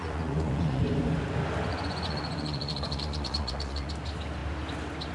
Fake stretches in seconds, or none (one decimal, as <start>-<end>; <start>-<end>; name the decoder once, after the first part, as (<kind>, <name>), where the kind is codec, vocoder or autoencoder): 0.0-0.8 (vocoder, Vocos); 1.7-3.9